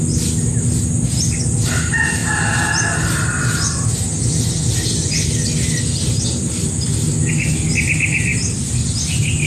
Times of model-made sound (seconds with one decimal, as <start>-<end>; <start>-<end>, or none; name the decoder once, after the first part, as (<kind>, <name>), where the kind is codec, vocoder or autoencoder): none